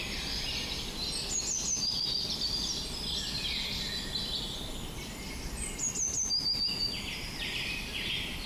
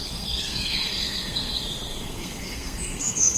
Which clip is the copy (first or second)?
second